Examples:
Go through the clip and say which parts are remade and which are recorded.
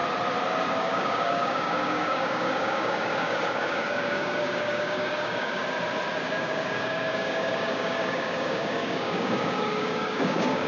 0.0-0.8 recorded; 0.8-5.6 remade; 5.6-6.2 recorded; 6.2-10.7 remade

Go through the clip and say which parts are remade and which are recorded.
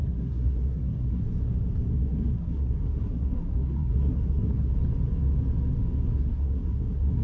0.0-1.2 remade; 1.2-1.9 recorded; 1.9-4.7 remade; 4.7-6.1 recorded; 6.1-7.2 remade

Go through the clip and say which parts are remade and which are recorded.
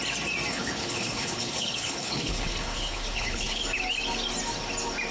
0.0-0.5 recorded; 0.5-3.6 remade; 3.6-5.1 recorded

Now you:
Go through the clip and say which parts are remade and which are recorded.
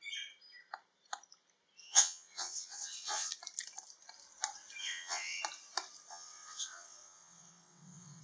0.0-1.8 recorded; 1.8-3.3 remade; 3.3-4.8 recorded; 4.8-5.4 remade; 5.4-6.1 recorded; 6.1-8.2 remade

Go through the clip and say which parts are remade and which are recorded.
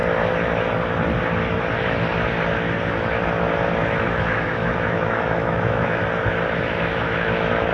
0.0-4.0 recorded; 4.0-6.0 remade; 6.0-6.6 recorded; 6.6-7.7 remade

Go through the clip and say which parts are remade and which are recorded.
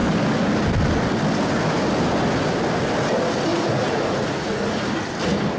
0.0-3.5 recorded; 3.5-4.9 remade; 4.9-5.6 recorded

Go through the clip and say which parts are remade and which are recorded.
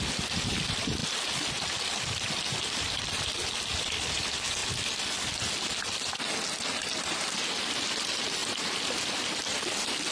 0.0-4.6 remade; 4.6-7.0 recorded; 7.0-8.4 remade; 8.4-9.4 recorded; 9.4-10.1 remade